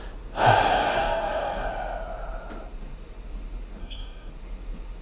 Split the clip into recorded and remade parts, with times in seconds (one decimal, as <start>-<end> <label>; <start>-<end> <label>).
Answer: 0.0-0.7 recorded; 0.7-1.7 remade; 1.7-3.8 recorded; 3.8-4.3 remade; 4.3-5.0 recorded